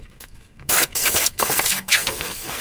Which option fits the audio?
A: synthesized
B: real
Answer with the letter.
A